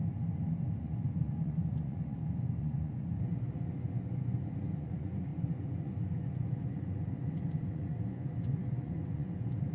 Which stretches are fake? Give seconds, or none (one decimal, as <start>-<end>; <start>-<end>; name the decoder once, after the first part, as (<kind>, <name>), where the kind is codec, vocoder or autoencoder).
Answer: 0.8-9.7 (vocoder, Vocos)

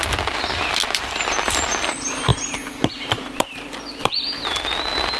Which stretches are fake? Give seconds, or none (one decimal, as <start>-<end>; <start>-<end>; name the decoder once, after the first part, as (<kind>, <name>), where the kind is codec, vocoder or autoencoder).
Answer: none

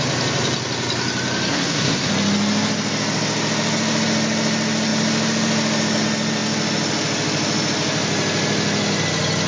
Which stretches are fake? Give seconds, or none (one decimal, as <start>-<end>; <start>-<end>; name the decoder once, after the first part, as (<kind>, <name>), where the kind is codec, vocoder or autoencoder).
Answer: 1.5-2.1 (codec, SNAC)

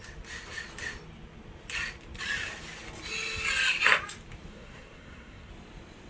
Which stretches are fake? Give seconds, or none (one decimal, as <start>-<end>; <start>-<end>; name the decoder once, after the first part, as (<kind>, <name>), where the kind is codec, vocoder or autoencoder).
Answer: 4.5-5.5 (codec, SNAC)

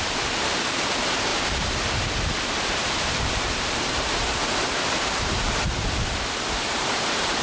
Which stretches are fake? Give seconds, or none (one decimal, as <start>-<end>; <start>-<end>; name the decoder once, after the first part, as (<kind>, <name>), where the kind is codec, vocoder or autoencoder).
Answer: 0.0-7.4 (vocoder, BigVGAN v2)

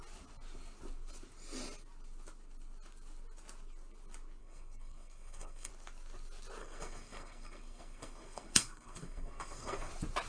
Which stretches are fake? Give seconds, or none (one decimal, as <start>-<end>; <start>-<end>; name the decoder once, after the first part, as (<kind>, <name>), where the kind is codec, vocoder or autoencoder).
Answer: 4.4-5.7 (codec, SNAC); 6.6-9.9